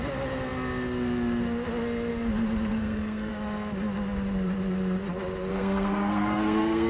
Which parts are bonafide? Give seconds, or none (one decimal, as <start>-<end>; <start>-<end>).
0.0-2.7; 3.3-5.5